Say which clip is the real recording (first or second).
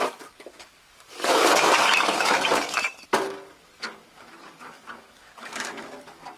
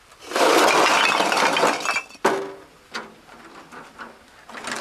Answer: second